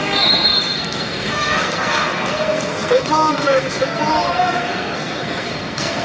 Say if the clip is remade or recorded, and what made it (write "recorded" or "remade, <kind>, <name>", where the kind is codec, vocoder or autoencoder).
remade, codec, SNAC